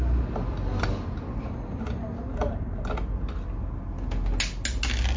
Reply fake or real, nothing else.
real